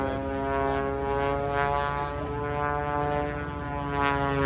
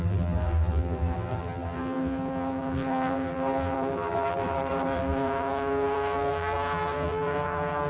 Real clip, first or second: first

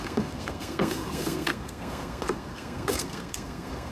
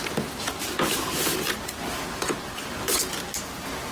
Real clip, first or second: second